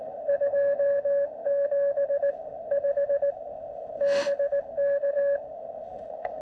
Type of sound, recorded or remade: remade